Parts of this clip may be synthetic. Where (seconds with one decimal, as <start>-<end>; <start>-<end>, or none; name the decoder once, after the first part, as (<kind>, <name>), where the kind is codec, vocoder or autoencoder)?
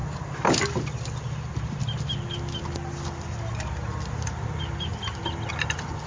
0.0-6.1 (vocoder, BigVGAN v2)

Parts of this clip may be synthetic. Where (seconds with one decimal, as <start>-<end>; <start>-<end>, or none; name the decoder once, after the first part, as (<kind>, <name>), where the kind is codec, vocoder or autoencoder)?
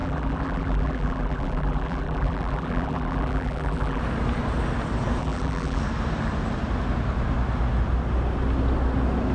0.0-4.0 (vocoder, BigVGAN v2); 5.2-5.8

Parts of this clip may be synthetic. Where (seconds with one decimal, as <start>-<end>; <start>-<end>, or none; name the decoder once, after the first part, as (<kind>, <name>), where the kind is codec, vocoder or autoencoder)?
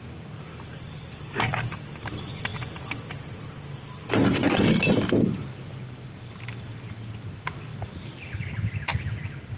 0.0-9.6 (vocoder, BigVGAN v2)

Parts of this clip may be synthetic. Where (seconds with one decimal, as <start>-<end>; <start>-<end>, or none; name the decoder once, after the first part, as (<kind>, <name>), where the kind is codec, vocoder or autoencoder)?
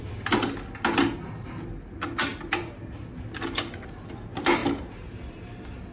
2.3-2.8 (vocoder, BigVGAN v2); 4.6-5.5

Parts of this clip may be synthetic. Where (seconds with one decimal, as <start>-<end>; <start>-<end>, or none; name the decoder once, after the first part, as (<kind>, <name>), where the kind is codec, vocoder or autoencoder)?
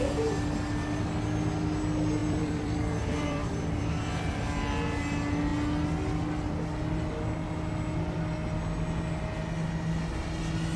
2.2-4.1 (vocoder, BigVGAN v2)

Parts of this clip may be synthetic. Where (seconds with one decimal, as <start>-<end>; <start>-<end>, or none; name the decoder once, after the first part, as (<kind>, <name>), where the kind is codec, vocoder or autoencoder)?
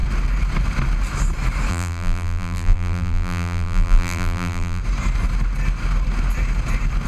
1.7-4.8 (vocoder, BigVGAN v2)